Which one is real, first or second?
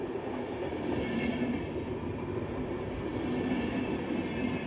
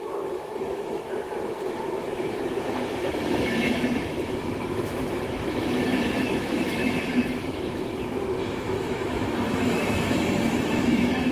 first